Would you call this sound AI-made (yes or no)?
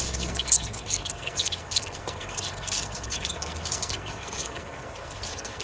yes